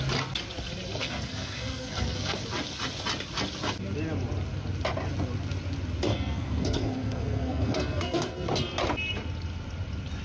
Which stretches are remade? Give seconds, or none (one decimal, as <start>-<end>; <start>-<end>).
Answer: 1.0-2.4; 6.1-8.5